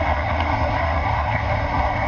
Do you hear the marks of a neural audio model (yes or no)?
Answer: yes